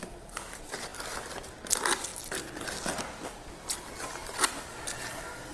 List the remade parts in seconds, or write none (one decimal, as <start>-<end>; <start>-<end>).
none

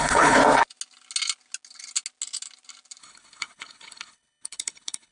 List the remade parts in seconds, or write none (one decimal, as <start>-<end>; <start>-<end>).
0.0-0.4; 3.0-5.1

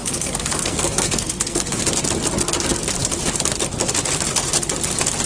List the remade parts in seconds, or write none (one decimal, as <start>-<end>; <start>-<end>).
0.0-1.8

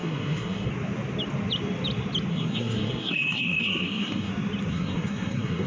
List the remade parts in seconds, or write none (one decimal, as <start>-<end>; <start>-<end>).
0.0-0.7; 2.3-4.3; 4.7-5.7

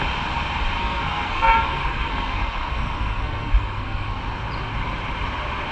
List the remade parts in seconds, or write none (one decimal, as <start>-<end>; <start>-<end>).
0.8-4.2